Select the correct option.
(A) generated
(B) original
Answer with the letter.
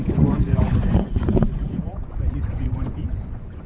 A